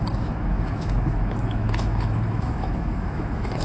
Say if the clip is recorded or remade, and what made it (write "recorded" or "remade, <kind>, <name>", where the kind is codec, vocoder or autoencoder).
remade, autoencoder, DAC-VAE